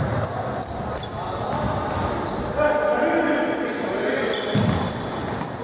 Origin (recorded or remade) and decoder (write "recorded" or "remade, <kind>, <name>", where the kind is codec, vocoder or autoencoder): recorded